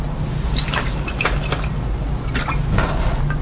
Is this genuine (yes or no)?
yes